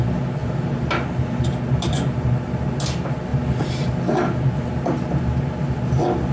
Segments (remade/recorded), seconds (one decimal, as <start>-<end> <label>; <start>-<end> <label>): 0.0-6.3 recorded

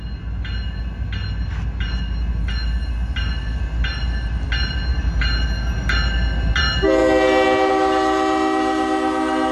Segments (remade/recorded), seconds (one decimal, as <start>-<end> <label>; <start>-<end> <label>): 0.0-9.5 recorded